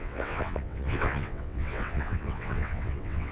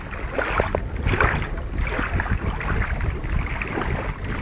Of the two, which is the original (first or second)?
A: second